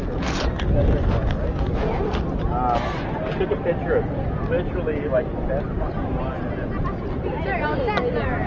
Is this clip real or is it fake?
real